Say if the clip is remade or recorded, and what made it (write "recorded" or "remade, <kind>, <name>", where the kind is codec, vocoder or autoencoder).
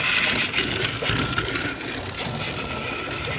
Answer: recorded